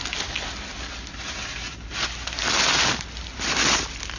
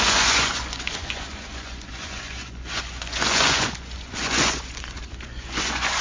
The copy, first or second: second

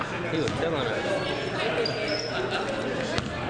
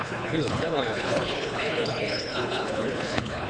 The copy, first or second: second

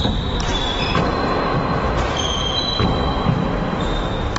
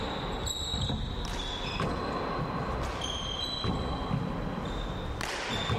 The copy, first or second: first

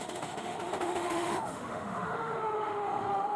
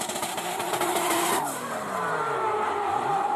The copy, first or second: first